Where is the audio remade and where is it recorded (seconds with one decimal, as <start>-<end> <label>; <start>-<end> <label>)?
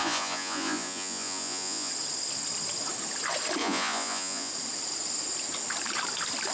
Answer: 0.0-1.9 remade; 1.9-3.6 recorded; 3.6-4.5 remade; 4.5-6.5 recorded